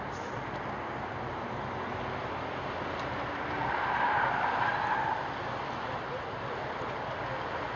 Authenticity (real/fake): real